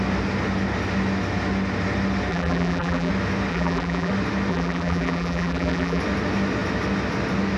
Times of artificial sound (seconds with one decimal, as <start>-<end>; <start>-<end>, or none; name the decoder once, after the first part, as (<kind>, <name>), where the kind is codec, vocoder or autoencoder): 2.3-3.1 (vocoder, BigVGAN v2); 3.5-4.1; 4.5-6.0